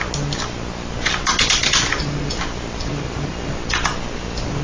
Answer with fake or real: real